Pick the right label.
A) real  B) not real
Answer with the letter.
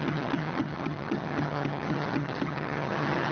B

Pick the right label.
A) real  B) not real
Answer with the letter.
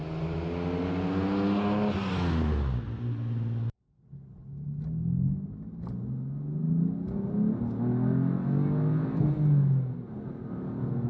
A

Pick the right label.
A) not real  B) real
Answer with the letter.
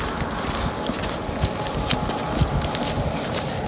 B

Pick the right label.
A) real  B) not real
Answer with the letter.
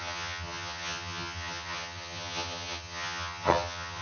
B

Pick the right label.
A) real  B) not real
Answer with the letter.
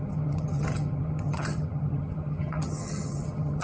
B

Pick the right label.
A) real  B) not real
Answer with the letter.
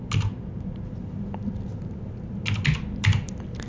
A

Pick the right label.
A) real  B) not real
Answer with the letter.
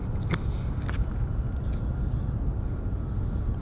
A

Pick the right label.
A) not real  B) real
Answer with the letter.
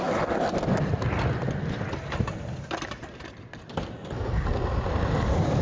B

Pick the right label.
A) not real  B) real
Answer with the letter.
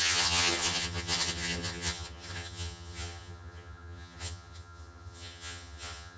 A